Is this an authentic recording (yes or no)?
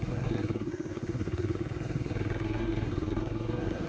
no